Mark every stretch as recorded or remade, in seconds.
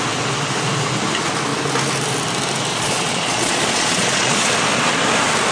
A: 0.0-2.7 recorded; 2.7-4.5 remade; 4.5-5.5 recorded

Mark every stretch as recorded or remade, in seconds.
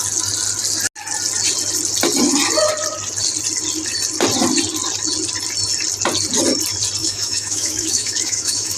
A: 0.0-7.0 recorded; 7.0-8.8 remade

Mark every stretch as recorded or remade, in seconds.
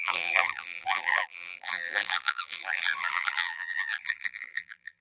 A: 0.0-5.0 remade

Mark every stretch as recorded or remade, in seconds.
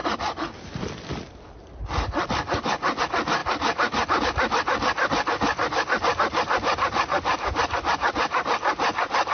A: 0.0-9.3 recorded